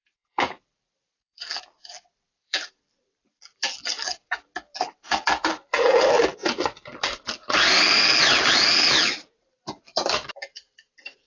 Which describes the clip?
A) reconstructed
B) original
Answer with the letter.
A